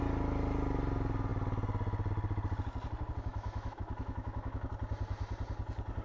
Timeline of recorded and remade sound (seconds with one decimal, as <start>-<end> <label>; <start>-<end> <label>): 0.0-3.3 recorded; 3.3-4.7 remade; 4.7-6.0 recorded